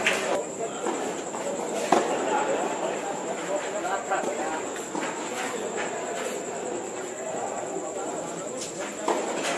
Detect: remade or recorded remade